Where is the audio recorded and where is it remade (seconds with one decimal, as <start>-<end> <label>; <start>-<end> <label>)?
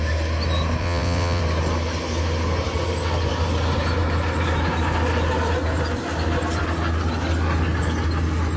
0.0-0.8 recorded; 0.8-1.4 remade; 1.4-8.6 recorded